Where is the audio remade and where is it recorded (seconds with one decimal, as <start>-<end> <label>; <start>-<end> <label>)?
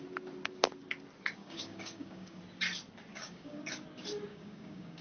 0.0-1.4 recorded; 1.4-2.4 remade; 2.4-3.1 recorded; 3.1-3.7 remade; 3.7-4.3 recorded; 4.3-5.0 remade